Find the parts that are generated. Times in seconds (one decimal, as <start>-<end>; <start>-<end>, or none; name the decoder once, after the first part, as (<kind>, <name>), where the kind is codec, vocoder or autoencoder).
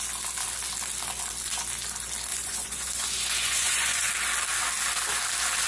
2.3-4.1 (vocoder, Vocos)